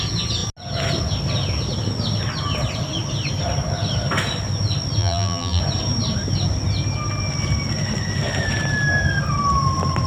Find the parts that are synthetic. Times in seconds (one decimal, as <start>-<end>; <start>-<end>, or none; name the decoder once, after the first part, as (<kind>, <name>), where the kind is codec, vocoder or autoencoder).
5.0-5.6 (vocoder, BigVGAN v2)